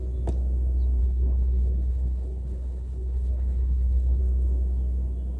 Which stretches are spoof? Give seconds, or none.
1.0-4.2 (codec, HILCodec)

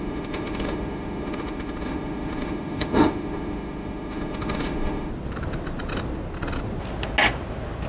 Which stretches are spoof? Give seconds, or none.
0.0-5.1 (autoencoder, DAC-VAE)

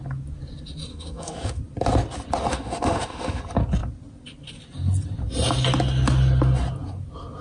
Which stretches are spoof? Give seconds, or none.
0.9-1.6 (autoencoder, DAC-VAE); 2.5-3.4

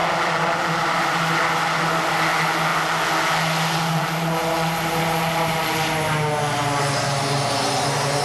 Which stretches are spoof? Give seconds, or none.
none

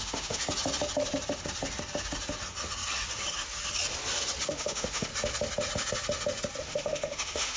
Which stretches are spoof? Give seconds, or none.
0.0-0.4 (autoencoder, DAC-VAE); 4.5-5.1; 6.6-7.6